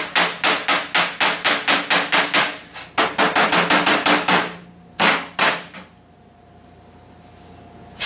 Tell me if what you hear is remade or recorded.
recorded